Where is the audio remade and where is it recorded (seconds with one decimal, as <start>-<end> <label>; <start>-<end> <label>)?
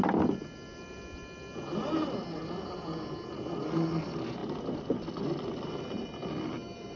0.0-7.0 recorded